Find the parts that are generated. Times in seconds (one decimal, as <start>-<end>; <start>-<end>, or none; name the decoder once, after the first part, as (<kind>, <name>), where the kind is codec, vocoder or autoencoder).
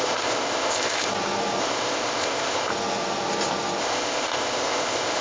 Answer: 0.0-1.1 (codec, ZipCodec); 1.6-2.7; 3.8-5.2